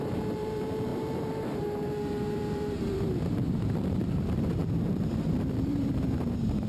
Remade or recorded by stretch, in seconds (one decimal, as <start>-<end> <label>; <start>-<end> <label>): 0.0-6.7 remade